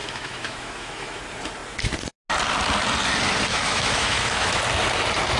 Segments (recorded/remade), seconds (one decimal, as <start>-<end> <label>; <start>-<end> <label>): 0.0-1.2 remade; 1.2-3.5 recorded; 3.5-4.6 remade; 4.6-5.4 recorded

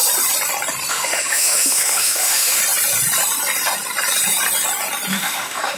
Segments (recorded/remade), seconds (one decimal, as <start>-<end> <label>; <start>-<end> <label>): 0.0-0.9 recorded; 0.9-2.6 remade; 2.6-5.1 recorded; 5.1-5.8 remade

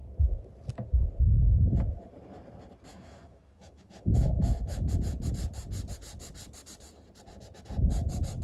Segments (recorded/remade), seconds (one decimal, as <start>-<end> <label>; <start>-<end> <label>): 0.0-2.9 recorded; 2.9-4.9 remade; 4.9-8.4 recorded

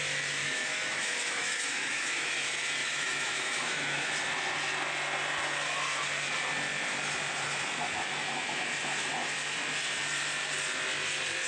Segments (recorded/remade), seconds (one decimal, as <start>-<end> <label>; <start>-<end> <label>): 0.0-0.4 recorded; 0.4-2.3 remade; 2.3-2.8 recorded; 2.8-4.1 remade; 4.1-11.5 recorded

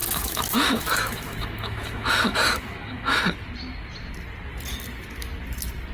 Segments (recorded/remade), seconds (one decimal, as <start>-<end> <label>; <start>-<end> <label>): 0.0-3.2 remade; 3.2-5.9 recorded

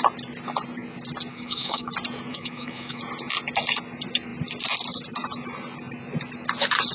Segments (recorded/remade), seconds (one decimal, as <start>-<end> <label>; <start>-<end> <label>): 0.0-1.3 recorded; 1.3-1.9 remade; 1.9-2.3 recorded; 2.3-3.0 remade; 3.0-6.9 recorded